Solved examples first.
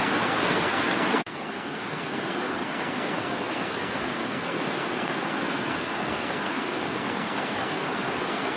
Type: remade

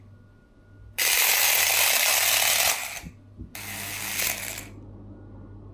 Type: recorded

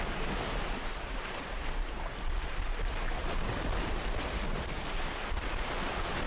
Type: recorded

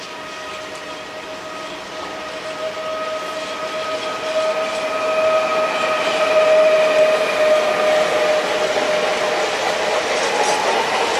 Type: recorded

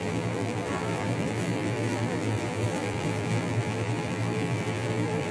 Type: remade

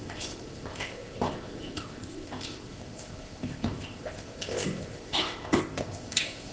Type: remade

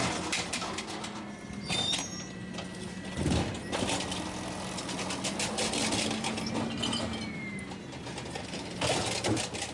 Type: recorded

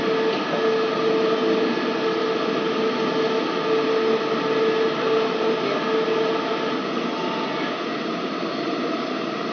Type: recorded